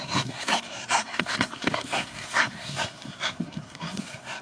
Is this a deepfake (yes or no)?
yes